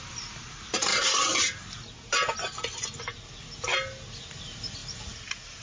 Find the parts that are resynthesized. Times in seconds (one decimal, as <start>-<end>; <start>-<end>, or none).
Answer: none